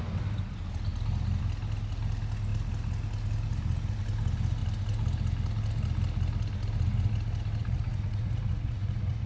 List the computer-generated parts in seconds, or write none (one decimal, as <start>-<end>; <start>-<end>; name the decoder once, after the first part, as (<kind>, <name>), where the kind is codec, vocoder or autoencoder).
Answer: 7.6-9.3 (vocoder, Vocos)